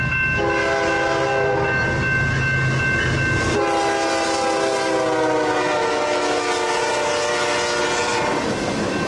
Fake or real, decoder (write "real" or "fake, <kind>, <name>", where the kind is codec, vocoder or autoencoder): real